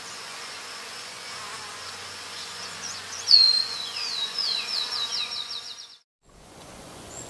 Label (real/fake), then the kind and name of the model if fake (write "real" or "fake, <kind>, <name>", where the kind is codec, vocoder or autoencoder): fake, vocoder, Vocos